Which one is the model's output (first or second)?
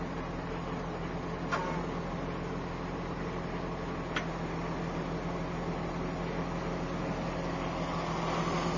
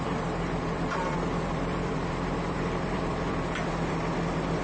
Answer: second